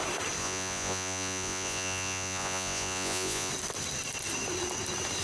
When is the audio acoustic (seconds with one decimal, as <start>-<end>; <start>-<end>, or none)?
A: 0.0-0.4; 3.5-5.2